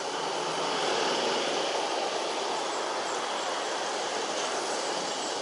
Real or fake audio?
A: real